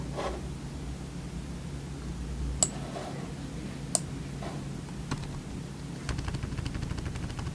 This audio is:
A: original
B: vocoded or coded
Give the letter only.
A